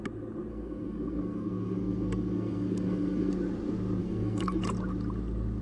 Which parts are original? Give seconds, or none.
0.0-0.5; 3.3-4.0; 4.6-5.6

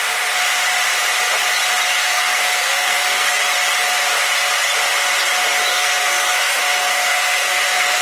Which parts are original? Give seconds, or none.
0.0-2.0; 3.3-5.7

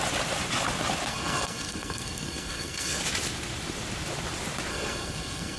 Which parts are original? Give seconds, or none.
0.0-1.1; 3.0-4.7

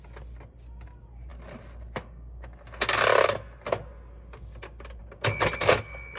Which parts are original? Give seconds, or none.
0.0-6.2

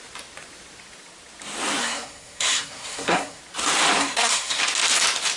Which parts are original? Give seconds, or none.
0.0-1.8; 3.4-4.0; 4.6-5.4